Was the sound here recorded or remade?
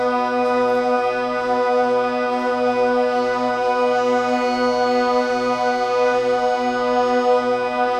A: recorded